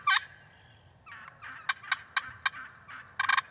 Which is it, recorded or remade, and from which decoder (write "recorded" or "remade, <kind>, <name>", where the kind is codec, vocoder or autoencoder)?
recorded